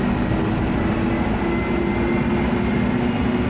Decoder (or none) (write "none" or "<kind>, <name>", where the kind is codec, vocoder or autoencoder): none